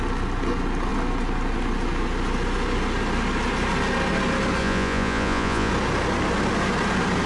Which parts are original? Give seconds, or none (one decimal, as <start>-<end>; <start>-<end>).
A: 0.0-4.6; 5.7-7.3